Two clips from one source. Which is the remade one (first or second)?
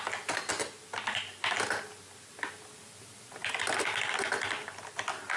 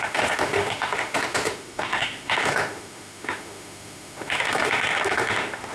second